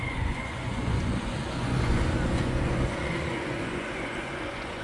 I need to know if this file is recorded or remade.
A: remade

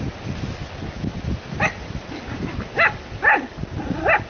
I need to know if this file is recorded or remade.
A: recorded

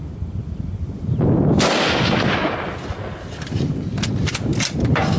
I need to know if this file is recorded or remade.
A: recorded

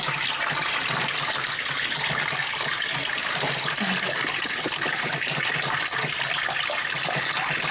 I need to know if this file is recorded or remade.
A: recorded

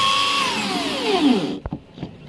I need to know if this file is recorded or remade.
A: recorded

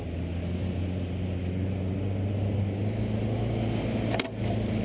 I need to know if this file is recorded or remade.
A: recorded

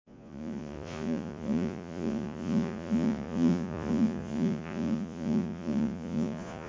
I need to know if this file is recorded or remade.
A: remade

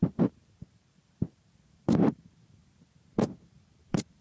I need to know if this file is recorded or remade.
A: remade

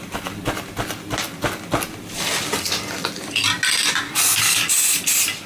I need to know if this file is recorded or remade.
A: recorded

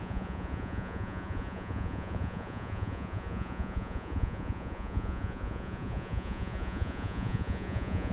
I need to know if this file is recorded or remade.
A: remade